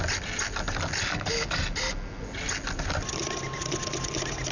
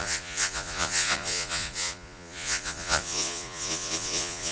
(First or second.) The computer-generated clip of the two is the second